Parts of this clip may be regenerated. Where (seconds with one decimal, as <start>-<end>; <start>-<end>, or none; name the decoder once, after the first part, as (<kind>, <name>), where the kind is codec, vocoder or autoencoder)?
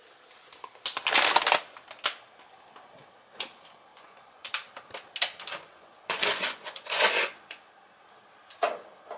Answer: 3.9-4.5 (vocoder, Vocos); 5.5-7.7